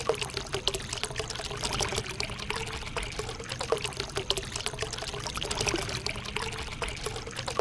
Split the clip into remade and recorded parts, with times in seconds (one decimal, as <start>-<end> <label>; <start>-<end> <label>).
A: 0.0-7.6 recorded